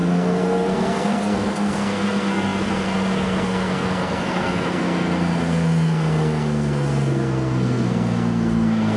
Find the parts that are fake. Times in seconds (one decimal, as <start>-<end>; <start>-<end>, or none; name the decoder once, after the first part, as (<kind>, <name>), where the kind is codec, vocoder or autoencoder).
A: 0.0-9.0 (codec, SNAC)